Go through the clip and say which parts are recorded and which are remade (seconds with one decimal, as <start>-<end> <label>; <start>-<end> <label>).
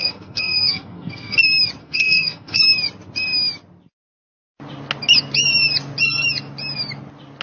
0.0-1.4 remade; 1.4-1.8 recorded; 1.8-2.6 remade; 2.6-7.4 recorded